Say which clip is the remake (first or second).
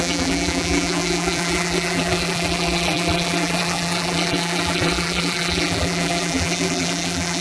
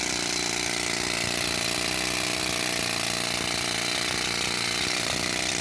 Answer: first